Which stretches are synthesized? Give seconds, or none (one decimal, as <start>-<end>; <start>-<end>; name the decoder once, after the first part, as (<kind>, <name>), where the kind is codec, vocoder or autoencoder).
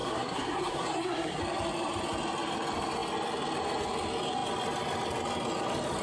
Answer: 0.0-1.4 (codec, SNAC)